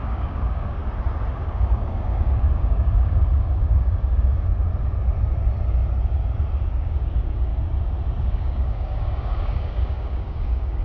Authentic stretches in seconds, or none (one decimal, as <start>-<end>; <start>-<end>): 0.8-1.4; 4.5-6.7; 7.5-8.3